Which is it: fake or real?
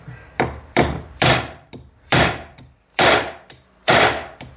fake